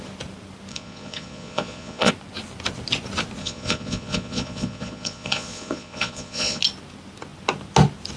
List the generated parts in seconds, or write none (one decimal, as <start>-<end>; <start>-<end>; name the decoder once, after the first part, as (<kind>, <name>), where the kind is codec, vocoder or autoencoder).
0.7-2.1 (vocoder, Vocos); 3.4-6.6